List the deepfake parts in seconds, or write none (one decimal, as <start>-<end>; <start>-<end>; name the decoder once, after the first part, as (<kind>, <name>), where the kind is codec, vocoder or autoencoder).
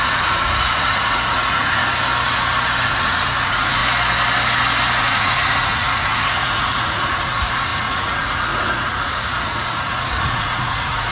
0.0-1.8 (vocoder, Vocos); 2.8-3.8; 5.0-11.1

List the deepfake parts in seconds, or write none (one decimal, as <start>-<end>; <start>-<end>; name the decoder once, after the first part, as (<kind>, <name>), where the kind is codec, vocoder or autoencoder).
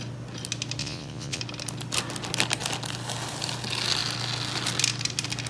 0.8-1.4 (vocoder, Vocos)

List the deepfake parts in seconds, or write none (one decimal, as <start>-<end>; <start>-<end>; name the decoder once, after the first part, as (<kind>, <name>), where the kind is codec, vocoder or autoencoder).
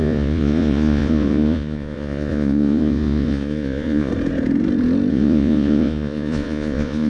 0.0-4.1 (vocoder, Vocos); 5.1-7.1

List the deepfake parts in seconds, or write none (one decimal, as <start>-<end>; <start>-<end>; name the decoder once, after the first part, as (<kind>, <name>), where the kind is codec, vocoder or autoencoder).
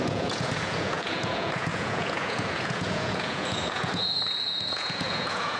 0.0-5.6 (vocoder, Vocos)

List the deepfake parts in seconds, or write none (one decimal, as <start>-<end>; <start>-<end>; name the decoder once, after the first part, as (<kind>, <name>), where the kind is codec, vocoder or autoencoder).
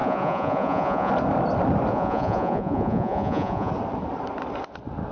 0.0-1.1 (vocoder, Vocos); 1.9-3.7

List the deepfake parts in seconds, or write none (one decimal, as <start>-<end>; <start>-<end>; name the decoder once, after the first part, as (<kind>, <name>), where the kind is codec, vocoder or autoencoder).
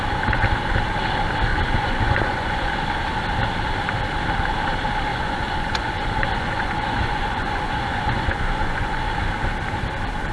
1.5-2.7 (vocoder, Vocos); 5.1-9.0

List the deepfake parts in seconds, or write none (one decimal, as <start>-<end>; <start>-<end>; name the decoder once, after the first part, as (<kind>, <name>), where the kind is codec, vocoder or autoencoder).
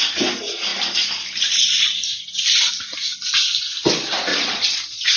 4.3-5.2 (vocoder, Vocos)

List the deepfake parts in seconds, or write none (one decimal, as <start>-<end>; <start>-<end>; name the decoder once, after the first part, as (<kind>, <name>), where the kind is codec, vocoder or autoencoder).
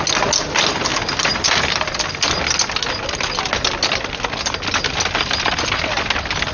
none